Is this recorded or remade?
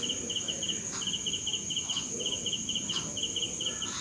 recorded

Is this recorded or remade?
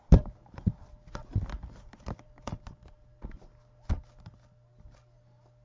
recorded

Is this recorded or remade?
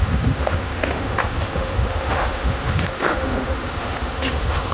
remade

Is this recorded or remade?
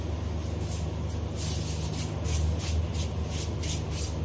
recorded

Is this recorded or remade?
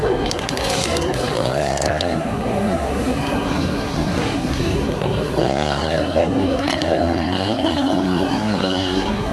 remade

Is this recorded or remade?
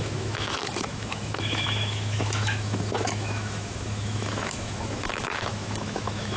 remade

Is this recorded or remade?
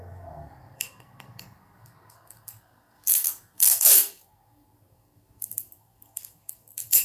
remade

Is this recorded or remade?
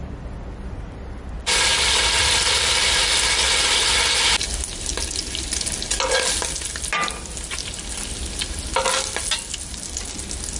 recorded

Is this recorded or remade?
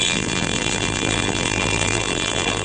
remade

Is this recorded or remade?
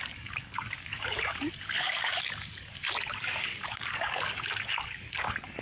remade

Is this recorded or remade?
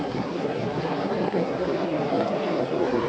remade